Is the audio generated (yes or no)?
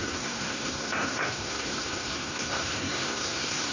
yes